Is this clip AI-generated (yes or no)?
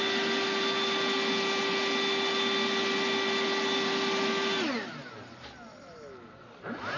no